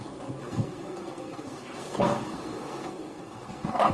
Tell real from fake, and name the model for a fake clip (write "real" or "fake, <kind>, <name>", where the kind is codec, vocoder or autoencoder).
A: fake, codec, SNAC